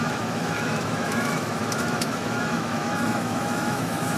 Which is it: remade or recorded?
remade